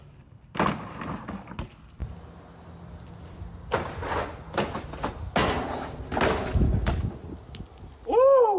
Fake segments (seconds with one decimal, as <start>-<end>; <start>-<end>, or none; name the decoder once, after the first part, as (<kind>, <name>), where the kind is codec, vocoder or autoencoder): none